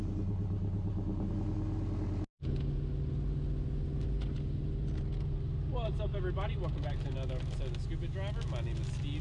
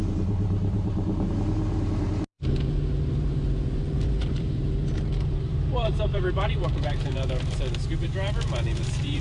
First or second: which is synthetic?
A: second